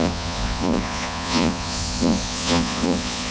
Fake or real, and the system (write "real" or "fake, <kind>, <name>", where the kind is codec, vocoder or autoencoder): fake, vocoder, Vocos